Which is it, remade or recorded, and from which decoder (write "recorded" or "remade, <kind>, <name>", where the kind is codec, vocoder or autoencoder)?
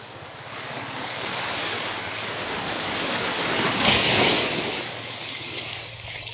remade, codec, DAC